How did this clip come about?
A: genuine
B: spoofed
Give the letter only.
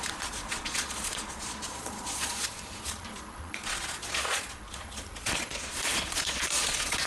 B